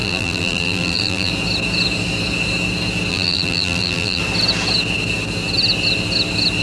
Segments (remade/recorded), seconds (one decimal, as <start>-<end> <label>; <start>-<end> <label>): 0.0-1.3 remade; 1.3-3.1 recorded; 3.1-4.2 remade; 4.2-6.6 recorded